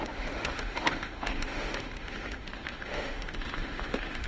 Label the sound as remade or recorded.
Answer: remade